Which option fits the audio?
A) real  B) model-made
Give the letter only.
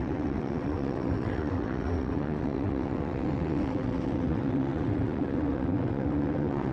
B